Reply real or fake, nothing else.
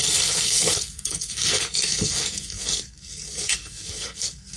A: fake